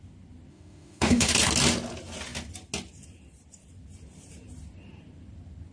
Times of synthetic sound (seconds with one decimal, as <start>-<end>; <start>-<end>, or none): 0.5-1.3